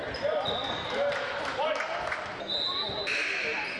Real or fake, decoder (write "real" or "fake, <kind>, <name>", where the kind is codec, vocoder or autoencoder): real